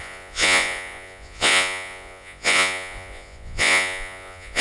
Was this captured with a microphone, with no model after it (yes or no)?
no